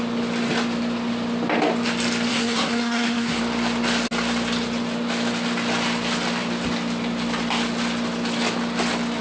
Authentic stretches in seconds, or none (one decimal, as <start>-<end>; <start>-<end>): 0.0-2.3; 3.4-9.2

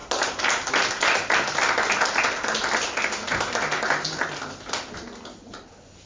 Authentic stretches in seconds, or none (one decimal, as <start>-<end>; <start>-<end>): 0.0-6.1

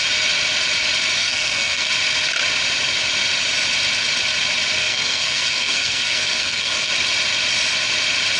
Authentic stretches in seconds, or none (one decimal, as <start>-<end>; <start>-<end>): 0.0-1.2; 1.9-4.8; 6.9-8.4

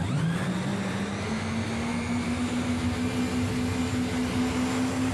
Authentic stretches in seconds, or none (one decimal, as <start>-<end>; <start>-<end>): 0.0-5.1